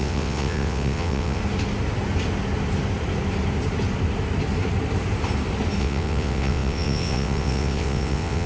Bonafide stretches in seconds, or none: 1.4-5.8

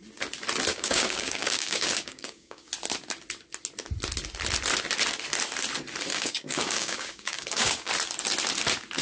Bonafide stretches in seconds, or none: 0.0-0.7; 2.7-6.1; 7.9-9.0

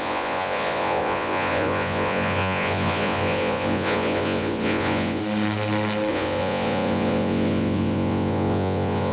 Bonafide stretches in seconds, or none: 5.2-6.1

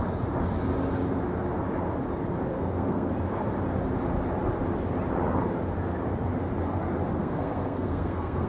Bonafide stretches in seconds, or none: 0.0-2.5; 3.1-7.2

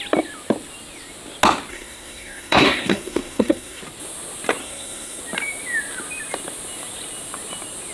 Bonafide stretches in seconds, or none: 0.0-1.7; 3.8-4.6; 5.2-7.9

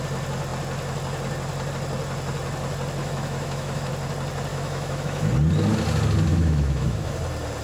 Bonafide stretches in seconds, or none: 0.0-3.0; 3.9-4.5; 5.3-6.3; 7.1-7.6

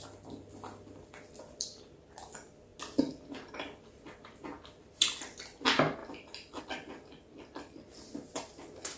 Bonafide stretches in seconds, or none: 0.0-9.0